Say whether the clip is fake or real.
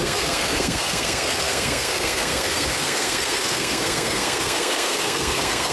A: fake